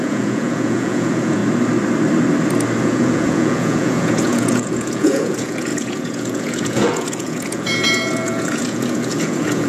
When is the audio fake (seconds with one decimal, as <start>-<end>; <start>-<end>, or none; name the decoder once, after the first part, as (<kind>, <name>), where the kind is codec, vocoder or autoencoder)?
0.0-1.4 (vocoder, Vocos); 2.8-9.7